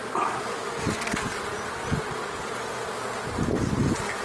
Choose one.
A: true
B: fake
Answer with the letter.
A